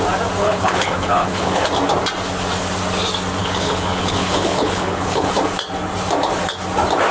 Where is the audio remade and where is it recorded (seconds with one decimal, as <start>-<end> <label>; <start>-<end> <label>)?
0.0-0.4 recorded; 0.4-1.6 remade; 1.6-3.4 recorded; 3.4-5.3 remade; 5.3-7.1 recorded